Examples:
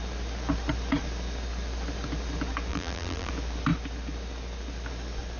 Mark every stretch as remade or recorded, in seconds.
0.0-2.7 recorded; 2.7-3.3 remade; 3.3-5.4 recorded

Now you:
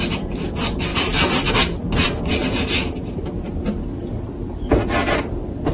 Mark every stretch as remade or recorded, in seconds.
0.0-0.9 recorded; 0.9-1.5 remade; 1.5-2.4 recorded; 2.4-3.3 remade; 3.3-5.7 recorded

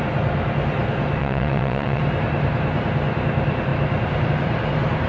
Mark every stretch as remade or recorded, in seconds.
0.0-1.2 recorded; 1.2-2.0 remade; 2.0-5.1 recorded

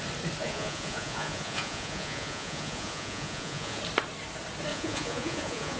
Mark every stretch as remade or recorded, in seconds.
0.0-0.4 recorded; 0.4-3.8 remade; 3.8-4.7 recorded; 4.7-5.8 remade